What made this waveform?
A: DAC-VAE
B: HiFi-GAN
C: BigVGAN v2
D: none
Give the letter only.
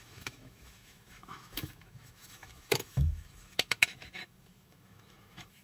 A